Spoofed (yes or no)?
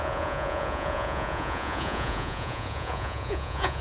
yes